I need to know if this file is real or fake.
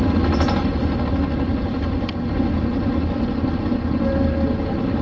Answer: real